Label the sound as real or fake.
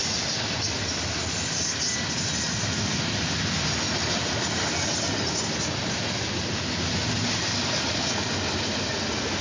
real